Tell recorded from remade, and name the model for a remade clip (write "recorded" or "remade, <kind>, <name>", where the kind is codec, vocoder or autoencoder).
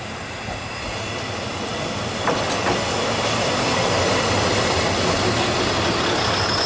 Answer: recorded